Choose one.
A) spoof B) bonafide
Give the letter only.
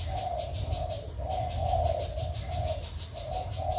B